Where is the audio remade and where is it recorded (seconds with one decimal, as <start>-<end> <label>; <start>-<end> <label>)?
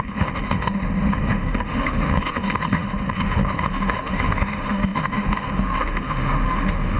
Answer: 0.0-7.0 remade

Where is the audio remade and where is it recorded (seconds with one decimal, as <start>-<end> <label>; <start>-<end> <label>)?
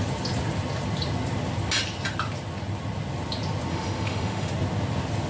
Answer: 0.0-3.7 recorded; 3.7-4.5 remade; 4.5-5.3 recorded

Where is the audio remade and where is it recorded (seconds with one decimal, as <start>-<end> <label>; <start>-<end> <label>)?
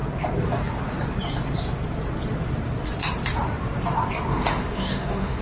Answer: 0.0-4.3 recorded; 4.3-5.4 remade